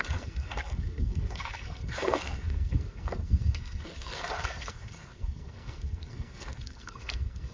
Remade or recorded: remade